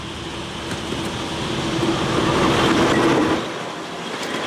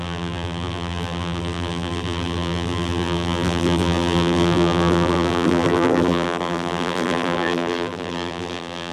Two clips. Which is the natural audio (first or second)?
first